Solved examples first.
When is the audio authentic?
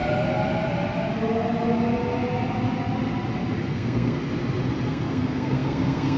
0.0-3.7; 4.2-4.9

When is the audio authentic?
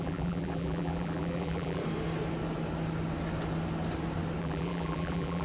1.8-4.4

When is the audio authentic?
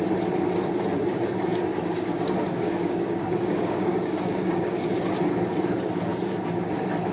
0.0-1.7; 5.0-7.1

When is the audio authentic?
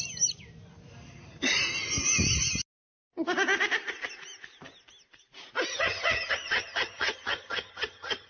0.0-5.7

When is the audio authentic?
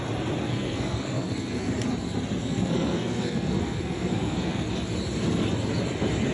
0.0-0.4; 1.7-2.4; 4.7-6.3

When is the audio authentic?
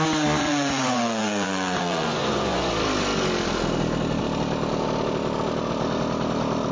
0.0-0.4; 2.7-6.7